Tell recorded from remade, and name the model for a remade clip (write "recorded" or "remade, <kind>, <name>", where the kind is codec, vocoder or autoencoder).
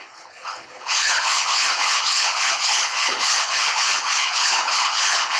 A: remade, codec, HILCodec